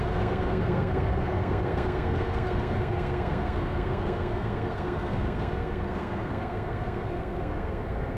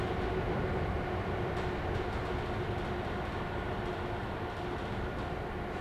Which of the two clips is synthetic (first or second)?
first